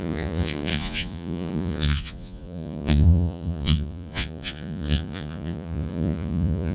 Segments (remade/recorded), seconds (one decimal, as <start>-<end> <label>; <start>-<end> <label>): 0.0-6.7 remade